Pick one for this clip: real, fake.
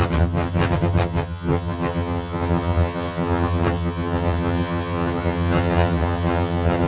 fake